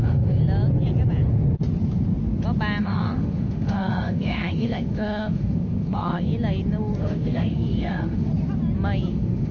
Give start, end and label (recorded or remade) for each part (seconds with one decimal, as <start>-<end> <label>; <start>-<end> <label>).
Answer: 0.0-0.4 remade; 0.4-2.8 recorded; 2.8-6.3 remade; 6.3-7.0 recorded; 7.0-8.3 remade; 8.3-9.1 recorded; 9.1-9.5 remade